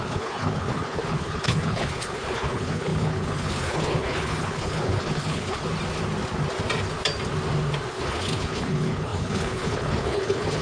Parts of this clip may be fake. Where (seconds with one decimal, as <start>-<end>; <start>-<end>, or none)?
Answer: 0.0-5.6; 7.9-10.6